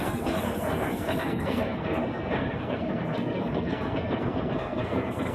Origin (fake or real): fake